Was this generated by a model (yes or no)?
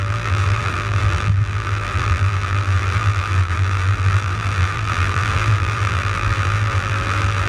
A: yes